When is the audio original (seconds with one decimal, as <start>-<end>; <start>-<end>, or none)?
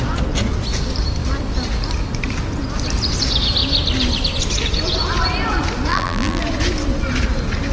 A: 0.0-5.9; 6.4-7.7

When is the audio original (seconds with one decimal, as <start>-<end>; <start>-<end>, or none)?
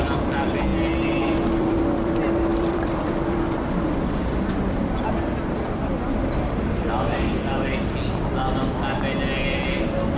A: 0.7-1.2; 7.3-10.2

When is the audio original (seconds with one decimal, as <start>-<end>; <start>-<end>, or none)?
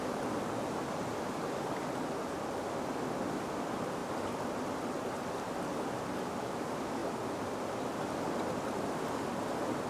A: 0.0-9.9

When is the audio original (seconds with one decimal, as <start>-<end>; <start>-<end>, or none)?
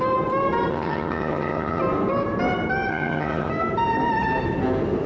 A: 0.0-0.7; 1.8-2.9; 3.5-5.1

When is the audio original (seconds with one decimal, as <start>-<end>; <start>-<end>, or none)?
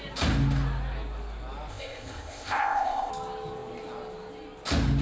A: 0.0-1.7; 3.1-5.0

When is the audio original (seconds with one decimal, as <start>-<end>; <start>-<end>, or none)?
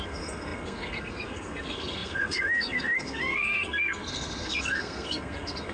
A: none